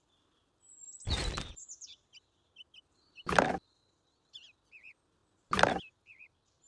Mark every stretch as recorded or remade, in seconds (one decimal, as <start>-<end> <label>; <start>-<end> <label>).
0.0-6.7 recorded